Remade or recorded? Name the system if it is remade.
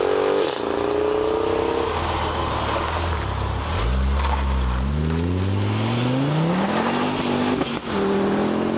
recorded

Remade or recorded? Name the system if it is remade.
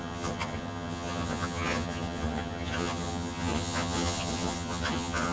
remade, vocoder, HiFi-GAN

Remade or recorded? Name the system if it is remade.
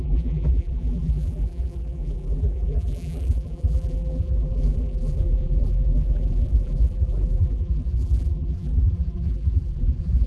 remade, vocoder, BigVGAN v2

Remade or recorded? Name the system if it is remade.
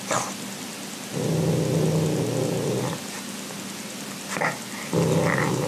recorded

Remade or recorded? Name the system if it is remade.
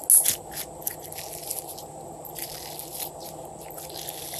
recorded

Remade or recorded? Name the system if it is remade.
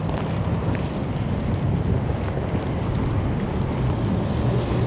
recorded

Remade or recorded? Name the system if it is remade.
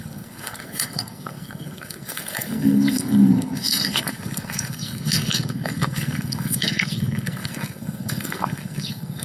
remade, codec, SNAC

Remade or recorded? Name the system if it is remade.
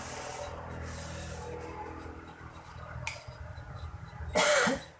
recorded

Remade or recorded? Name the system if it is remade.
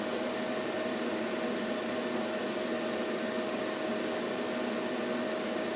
recorded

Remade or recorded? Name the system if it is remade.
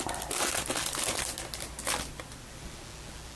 recorded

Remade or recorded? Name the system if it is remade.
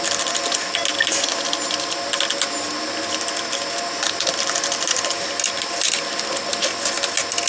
recorded